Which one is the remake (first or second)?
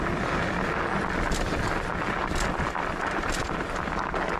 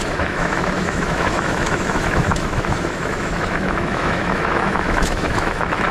second